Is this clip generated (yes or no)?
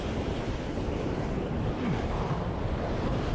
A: no